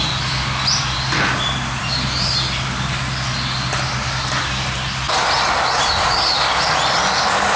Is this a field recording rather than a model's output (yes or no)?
yes